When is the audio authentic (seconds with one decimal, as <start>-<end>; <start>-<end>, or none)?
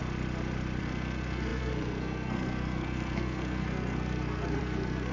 0.0-0.8